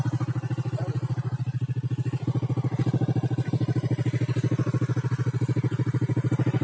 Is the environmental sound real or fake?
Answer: real